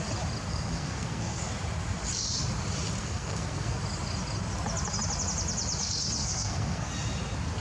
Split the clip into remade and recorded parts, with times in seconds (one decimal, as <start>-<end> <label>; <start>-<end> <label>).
0.0-0.5 recorded; 0.5-1.4 remade; 1.4-3.0 recorded; 3.0-3.8 remade; 3.8-6.2 recorded; 6.2-6.9 remade; 6.9-7.6 recorded